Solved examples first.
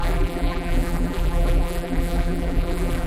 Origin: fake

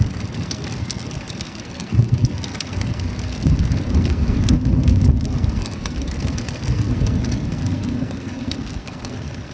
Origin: fake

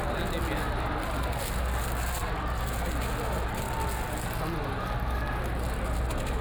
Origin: real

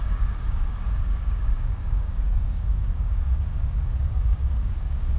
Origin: fake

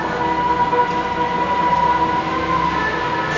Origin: real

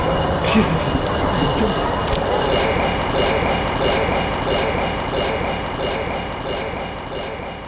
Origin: real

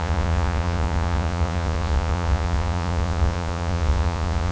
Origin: fake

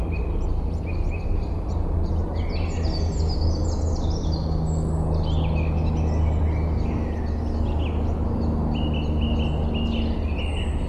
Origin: real